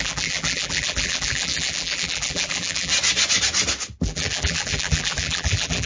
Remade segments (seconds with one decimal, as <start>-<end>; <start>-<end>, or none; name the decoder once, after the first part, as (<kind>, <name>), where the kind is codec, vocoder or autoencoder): 0.0-2.9 (vocoder, BigVGAN v2); 4.0-5.9